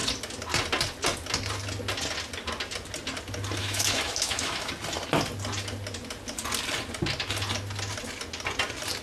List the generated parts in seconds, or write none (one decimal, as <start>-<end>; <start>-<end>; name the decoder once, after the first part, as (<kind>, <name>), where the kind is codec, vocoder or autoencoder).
3.6-4.7 (autoencoder, DAC-VAE)